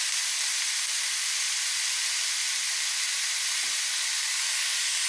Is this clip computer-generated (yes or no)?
no